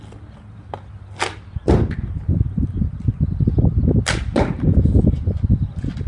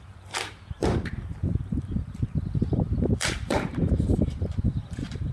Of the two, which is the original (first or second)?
first